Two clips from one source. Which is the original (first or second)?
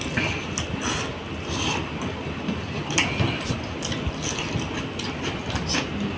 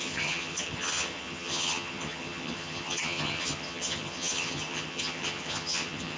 first